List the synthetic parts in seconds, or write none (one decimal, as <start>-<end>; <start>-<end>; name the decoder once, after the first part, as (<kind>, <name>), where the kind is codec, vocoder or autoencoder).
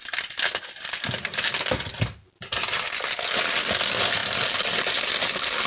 none